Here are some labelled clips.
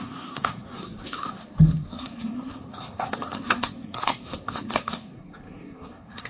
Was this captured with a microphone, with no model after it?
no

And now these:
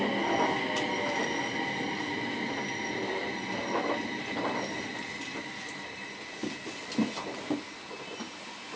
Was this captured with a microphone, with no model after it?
yes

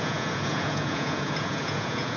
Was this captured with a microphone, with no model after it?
no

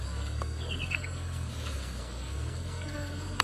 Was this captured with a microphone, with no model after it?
no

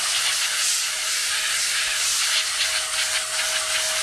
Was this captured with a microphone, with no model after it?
yes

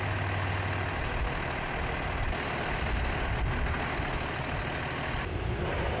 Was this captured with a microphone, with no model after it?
yes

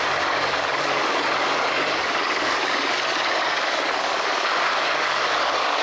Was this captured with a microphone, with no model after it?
no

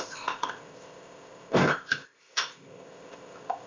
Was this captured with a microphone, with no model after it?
no